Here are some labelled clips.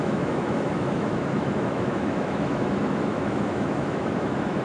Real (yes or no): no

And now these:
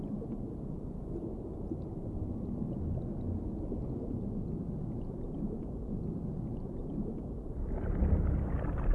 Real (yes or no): yes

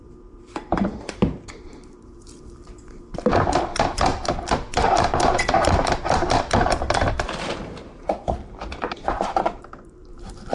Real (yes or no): no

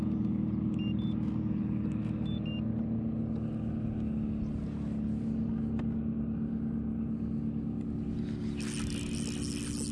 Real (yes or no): yes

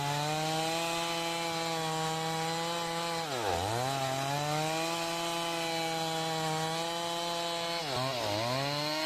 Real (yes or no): yes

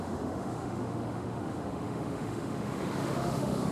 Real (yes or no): no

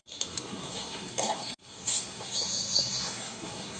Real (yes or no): no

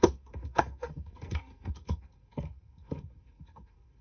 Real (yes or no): no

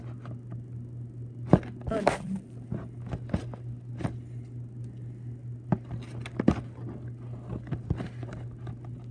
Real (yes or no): yes